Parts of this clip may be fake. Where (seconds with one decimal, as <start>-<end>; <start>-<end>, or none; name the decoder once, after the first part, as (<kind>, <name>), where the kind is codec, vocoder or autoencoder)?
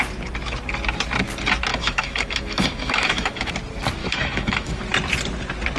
1.7-3.5 (autoencoder, DAC-VAE); 4.0-4.8